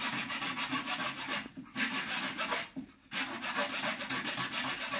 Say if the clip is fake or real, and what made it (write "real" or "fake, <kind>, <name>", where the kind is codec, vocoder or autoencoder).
real